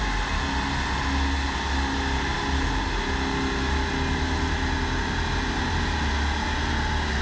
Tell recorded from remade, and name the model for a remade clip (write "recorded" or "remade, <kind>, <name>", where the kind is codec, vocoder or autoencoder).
recorded